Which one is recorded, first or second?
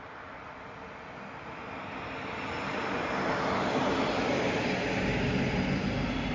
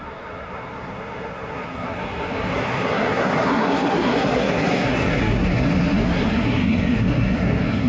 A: first